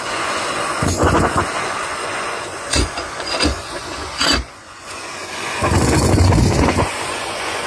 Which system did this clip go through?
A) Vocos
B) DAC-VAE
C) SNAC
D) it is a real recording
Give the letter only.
A